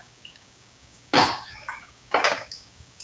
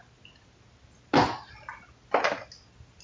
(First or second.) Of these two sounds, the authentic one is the second